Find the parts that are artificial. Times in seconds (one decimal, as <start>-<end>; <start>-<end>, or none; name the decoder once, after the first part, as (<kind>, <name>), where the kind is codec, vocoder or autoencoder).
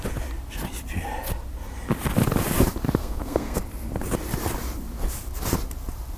3.0-3.6 (codec, SNAC)